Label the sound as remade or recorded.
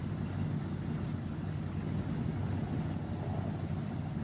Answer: recorded